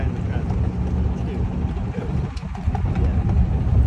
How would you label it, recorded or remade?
recorded